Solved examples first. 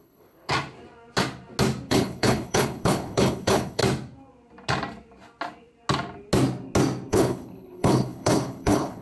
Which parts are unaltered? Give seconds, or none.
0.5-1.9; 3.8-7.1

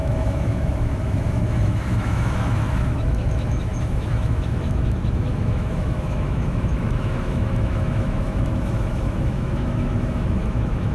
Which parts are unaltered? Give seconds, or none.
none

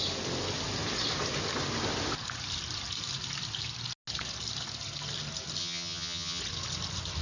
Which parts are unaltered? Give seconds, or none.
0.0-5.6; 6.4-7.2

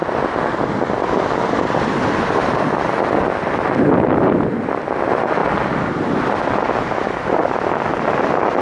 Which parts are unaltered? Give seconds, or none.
0.0-8.6

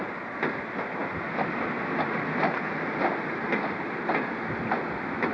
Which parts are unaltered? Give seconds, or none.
0.0-5.3

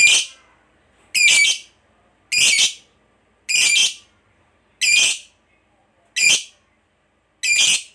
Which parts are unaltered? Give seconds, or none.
0.0-7.9